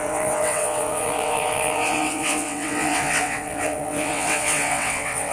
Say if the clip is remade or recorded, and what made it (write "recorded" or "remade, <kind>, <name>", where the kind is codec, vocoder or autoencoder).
remade, vocoder, WaveNeXt